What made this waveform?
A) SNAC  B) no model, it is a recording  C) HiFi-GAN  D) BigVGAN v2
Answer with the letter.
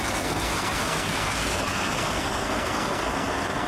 A